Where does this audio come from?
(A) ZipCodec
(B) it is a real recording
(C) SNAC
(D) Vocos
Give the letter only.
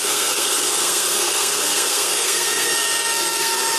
C